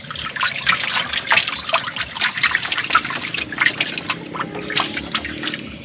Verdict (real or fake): real